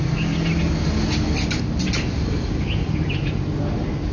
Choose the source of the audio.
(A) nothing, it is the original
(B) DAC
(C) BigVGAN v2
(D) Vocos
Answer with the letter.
A